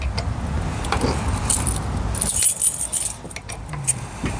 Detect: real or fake real